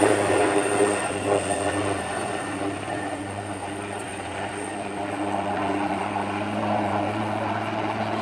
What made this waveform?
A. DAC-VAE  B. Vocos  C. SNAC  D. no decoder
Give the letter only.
B